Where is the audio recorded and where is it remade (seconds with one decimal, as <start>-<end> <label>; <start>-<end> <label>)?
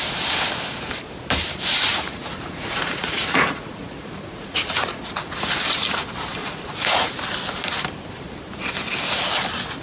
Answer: 0.0-1.9 recorded; 1.9-5.0 remade; 5.0-6.4 recorded; 6.4-7.1 remade; 7.1-9.8 recorded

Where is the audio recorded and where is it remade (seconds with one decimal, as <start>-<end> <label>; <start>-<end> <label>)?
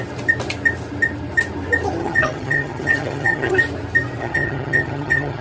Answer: 0.0-2.0 recorded; 2.0-3.5 remade; 3.5-4.2 recorded; 4.2-5.4 remade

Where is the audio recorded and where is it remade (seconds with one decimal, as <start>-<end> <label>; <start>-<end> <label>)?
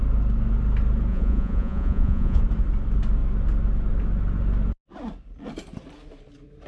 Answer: 0.0-1.1 recorded; 1.1-2.4 remade; 2.4-6.7 recorded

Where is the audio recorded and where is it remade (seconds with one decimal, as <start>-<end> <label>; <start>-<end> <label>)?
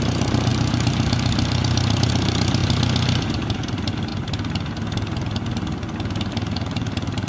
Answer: 0.0-2.6 remade; 2.6-3.3 recorded; 3.3-4.1 remade; 4.1-6.3 recorded; 6.3-7.3 remade